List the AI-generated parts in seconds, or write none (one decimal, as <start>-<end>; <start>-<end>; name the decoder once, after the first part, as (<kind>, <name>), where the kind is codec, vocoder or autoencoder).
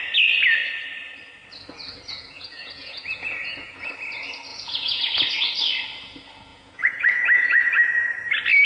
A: 2.1-3.9 (vocoder, Vocos); 4.5-5.0; 6.5-7.7